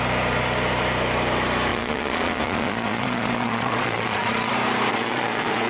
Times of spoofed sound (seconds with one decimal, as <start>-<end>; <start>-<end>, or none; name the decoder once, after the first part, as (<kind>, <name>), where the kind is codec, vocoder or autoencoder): 1.7-4.5 (vocoder, Vocos); 4.9-5.7